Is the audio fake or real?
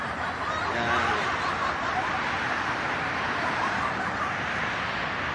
real